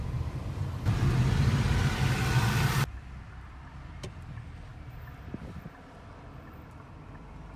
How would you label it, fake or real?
fake